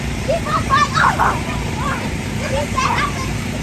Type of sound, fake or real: fake